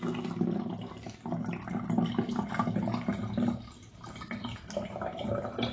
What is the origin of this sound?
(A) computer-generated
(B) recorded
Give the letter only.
B